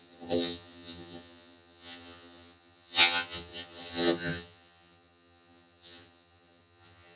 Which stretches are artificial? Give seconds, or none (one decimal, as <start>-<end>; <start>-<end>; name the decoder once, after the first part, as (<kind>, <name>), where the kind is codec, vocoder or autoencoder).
0.0-7.2 (vocoder, HiFi-GAN)